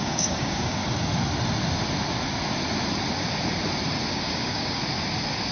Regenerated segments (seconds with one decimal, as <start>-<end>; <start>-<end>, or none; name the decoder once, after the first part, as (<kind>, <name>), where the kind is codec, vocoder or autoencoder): 0.0-0.8 (codec, DAC); 4.1-4.8